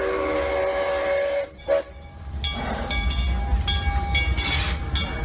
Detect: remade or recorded recorded